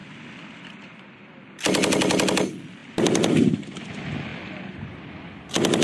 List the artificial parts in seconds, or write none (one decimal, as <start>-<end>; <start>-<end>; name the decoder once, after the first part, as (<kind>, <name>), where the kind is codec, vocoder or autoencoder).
0.0-1.2 (vocoder, BigVGAN v2)